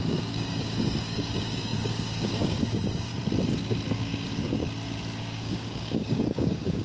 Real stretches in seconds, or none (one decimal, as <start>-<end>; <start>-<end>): 3.1-3.9; 4.6-5.2